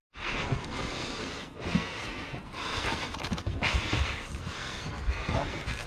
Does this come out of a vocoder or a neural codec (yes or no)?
yes